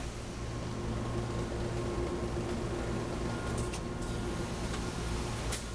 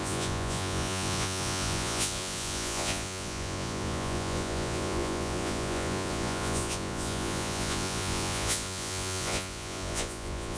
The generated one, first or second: second